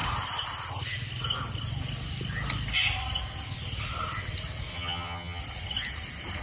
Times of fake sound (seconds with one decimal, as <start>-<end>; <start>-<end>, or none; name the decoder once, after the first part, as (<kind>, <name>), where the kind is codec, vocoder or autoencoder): 4.7-5.4 (vocoder, HiFi-GAN)